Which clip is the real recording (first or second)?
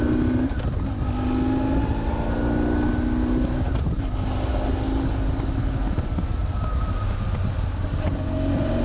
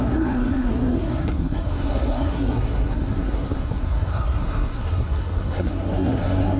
first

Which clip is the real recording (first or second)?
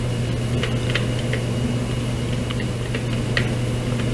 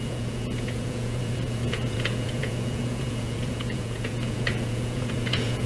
first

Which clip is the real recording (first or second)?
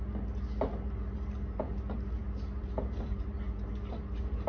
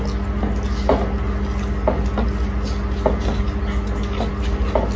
second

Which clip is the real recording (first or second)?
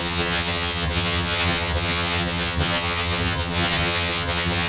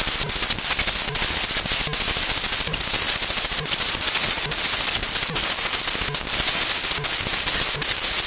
second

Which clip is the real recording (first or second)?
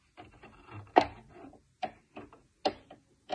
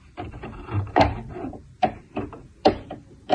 first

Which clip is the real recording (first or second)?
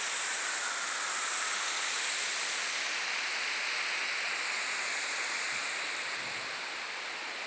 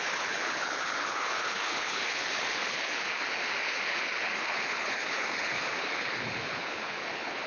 first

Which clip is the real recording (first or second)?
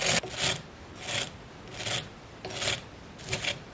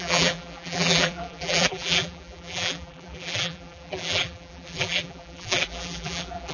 first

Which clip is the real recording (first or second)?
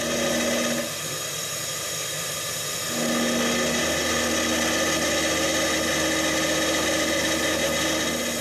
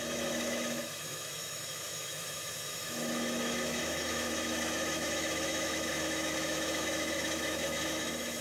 first